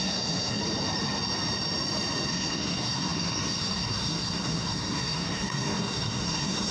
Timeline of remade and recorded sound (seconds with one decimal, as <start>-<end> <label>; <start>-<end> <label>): 0.0-0.6 remade; 0.6-2.3 recorded; 2.3-6.7 remade